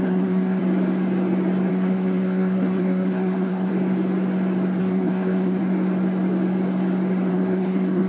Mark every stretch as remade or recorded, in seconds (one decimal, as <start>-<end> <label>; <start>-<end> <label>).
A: 0.0-0.6 remade; 0.6-1.7 recorded; 1.7-3.7 remade; 3.7-4.8 recorded; 4.8-5.6 remade; 5.6-7.3 recorded; 7.3-8.1 remade